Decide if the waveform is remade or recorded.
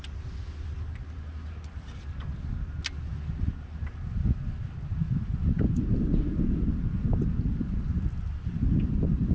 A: recorded